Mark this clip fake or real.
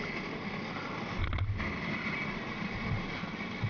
real